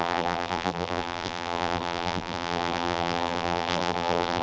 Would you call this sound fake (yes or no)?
yes